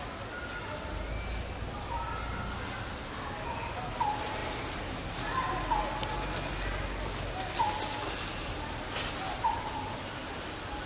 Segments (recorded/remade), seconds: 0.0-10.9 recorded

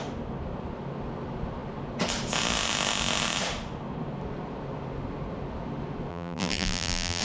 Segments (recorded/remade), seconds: 0.0-6.1 recorded; 6.1-7.2 remade

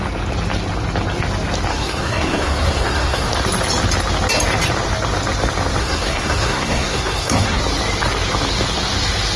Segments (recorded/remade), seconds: 0.0-1.7 recorded; 1.7-3.3 remade; 3.3-5.8 recorded; 5.8-7.6 remade; 7.6-9.4 recorded

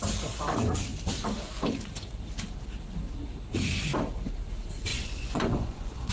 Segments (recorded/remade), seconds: 0.0-4.9 recorded; 4.9-6.1 remade

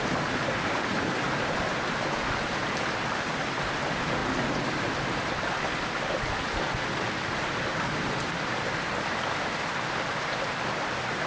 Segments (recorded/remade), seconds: 0.0-11.3 recorded

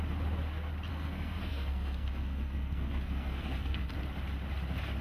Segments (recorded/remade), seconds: 0.0-0.9 recorded; 0.9-3.9 remade; 3.9-5.0 recorded